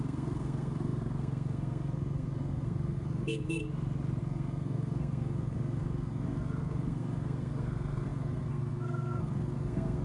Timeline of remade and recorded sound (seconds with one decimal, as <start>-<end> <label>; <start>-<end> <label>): 0.0-3.6 remade; 3.6-4.2 recorded; 4.2-10.0 remade

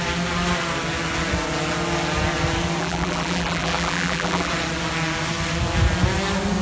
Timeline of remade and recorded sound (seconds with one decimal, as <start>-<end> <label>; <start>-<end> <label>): 0.0-2.8 recorded; 2.8-4.5 remade; 4.5-6.6 recorded

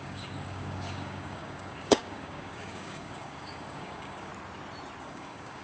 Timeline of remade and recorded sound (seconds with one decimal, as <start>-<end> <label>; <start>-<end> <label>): 0.0-4.3 remade; 4.3-5.0 recorded; 5.0-5.6 remade

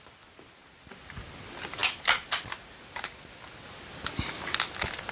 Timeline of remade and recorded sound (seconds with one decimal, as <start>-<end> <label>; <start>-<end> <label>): 0.0-0.6 recorded; 0.6-1.3 remade; 1.3-5.1 recorded

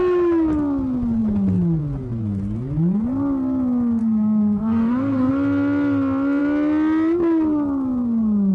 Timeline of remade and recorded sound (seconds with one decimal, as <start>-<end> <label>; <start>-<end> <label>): 0.0-4.0 recorded; 4.0-5.3 remade; 5.3-8.5 recorded

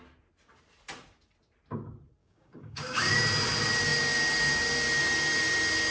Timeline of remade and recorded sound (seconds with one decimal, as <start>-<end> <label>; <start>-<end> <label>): 0.0-2.2 recorded; 2.2-3.2 remade; 3.2-5.9 recorded